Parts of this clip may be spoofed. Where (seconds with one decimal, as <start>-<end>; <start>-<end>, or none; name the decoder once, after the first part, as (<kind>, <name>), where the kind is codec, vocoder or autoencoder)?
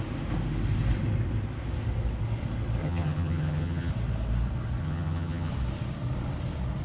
2.8-3.9 (vocoder, HiFi-GAN); 4.8-5.5